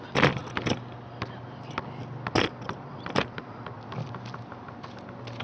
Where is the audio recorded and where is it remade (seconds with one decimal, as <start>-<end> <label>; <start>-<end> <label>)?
0.0-5.4 recorded